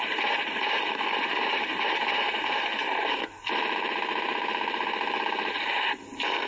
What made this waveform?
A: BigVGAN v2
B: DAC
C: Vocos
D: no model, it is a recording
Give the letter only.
A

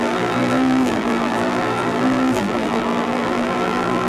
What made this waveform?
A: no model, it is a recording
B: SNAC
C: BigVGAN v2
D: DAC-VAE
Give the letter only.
C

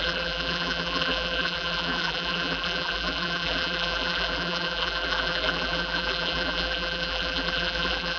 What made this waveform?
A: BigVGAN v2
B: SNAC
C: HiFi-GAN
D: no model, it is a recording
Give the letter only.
A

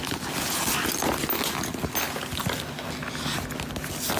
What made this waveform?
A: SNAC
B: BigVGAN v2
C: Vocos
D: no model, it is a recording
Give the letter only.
D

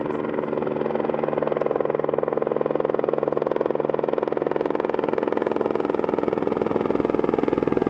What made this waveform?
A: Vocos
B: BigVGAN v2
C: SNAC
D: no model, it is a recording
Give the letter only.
D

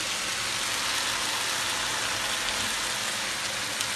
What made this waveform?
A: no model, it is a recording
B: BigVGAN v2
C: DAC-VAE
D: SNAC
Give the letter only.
A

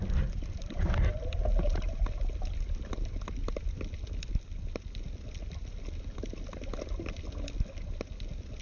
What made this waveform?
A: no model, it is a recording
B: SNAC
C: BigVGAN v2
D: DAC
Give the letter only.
A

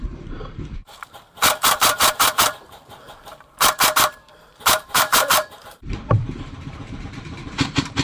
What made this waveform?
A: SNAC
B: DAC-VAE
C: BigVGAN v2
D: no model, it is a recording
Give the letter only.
C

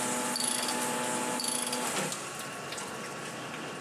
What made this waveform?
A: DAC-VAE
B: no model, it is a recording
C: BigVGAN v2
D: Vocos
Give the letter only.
B